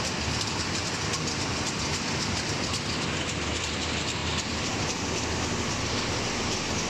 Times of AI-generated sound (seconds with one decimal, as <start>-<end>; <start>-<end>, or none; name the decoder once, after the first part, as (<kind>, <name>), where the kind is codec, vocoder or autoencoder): none